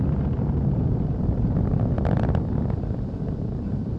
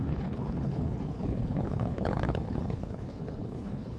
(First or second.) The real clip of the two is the first